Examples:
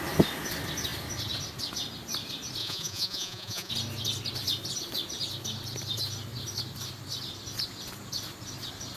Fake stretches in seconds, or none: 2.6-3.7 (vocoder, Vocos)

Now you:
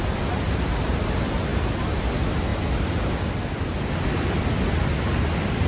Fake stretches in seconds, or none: none

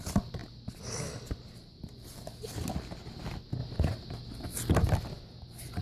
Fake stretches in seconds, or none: none